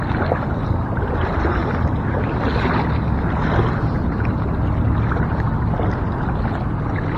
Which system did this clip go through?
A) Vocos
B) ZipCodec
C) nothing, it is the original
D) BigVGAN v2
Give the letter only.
C